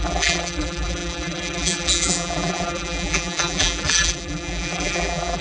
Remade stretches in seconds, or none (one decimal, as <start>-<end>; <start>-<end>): 0.0-5.4